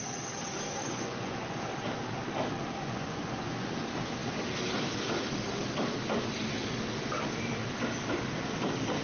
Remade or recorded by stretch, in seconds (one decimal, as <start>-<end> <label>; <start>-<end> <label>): 0.0-0.8 recorded; 0.8-1.6 remade; 1.6-2.8 recorded; 2.8-3.7 remade; 3.7-9.0 recorded